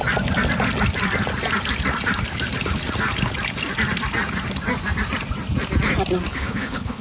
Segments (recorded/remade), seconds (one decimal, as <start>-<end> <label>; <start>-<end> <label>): 0.0-6.3 recorded; 6.3-7.0 remade